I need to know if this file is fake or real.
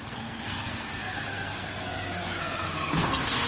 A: fake